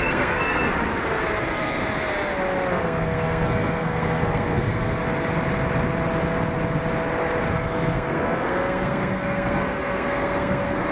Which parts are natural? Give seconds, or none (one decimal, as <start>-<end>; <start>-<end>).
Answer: 0.7-1.4; 1.8-2.7; 5.0-7.5